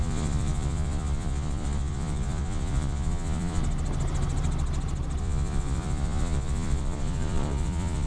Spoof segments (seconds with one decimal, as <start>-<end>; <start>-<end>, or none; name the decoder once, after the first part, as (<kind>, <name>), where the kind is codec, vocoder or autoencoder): 0.0-3.6 (vocoder, Vocos); 5.2-8.1